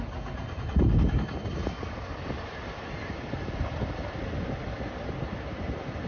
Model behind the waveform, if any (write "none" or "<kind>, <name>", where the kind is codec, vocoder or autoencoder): none